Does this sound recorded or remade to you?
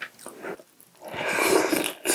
recorded